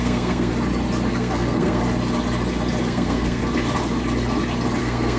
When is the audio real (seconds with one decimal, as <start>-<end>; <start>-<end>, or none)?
0.5-1.1; 1.8-2.8; 3.4-4.8